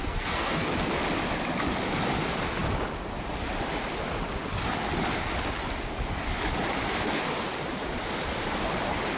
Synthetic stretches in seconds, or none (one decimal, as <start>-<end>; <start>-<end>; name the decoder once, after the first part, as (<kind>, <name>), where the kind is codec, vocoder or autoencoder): 0.0-0.7 (codec, SNAC)